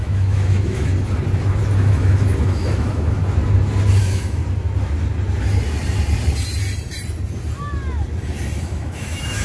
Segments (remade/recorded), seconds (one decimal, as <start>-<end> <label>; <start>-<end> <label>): 0.0-0.9 remade; 0.9-1.8 recorded; 1.8-3.2 remade; 3.2-4.0 recorded; 4.0-4.4 remade; 4.4-8.6 recorded; 8.6-9.4 remade

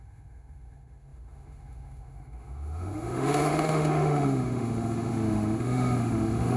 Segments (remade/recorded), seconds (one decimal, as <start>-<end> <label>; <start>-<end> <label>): 0.0-6.6 remade

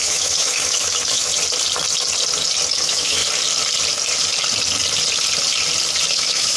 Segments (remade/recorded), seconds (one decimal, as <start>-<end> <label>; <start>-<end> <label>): 0.0-1.3 remade; 1.3-2.7 recorded; 2.7-3.2 remade; 3.2-6.1 recorded; 6.1-6.6 remade

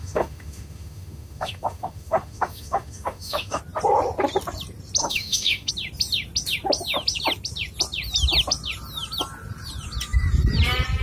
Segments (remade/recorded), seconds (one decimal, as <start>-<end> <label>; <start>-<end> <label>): 0.0-3.6 remade; 3.6-5.0 recorded; 5.0-5.7 remade; 5.7-11.0 recorded

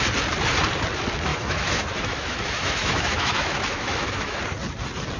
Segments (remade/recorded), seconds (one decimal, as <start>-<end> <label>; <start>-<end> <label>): 0.0-1.3 recorded; 1.3-4.4 remade; 4.4-5.2 recorded

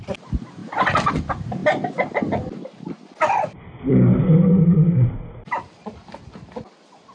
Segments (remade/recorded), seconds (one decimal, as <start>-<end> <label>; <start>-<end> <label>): 0.0-7.1 recorded

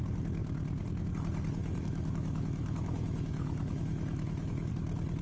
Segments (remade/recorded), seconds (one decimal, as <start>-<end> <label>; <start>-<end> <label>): 0.0-1.6 recorded; 1.6-4.7 remade; 4.7-5.2 recorded